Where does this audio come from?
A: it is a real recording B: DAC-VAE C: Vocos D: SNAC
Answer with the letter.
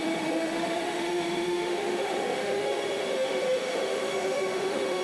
B